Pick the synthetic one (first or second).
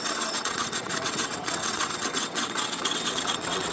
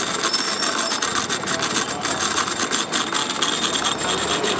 first